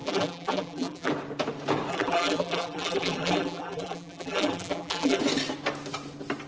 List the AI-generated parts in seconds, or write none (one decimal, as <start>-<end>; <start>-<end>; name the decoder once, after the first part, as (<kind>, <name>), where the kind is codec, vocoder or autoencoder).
0.0-1.1 (vocoder, BigVGAN v2); 1.9-5.2